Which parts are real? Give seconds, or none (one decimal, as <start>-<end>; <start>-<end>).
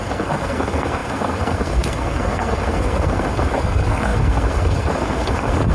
none